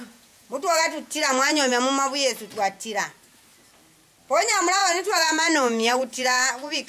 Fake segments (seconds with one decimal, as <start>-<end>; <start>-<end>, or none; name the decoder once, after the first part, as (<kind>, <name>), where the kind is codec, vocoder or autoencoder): 0.0-1.7 (vocoder, Vocos); 4.3-6.9